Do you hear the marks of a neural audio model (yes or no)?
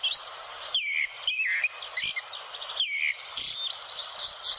no